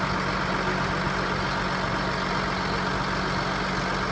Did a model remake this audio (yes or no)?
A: no